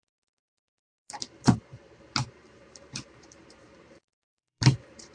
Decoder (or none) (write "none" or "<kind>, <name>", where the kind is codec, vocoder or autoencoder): vocoder, BigVGAN v2